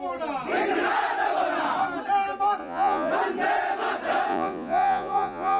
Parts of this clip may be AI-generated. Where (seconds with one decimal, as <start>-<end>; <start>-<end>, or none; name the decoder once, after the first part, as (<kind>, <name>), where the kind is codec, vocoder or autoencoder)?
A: 2.6-3.1 (vocoder, Vocos); 4.3-5.6